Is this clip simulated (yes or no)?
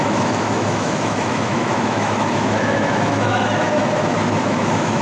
yes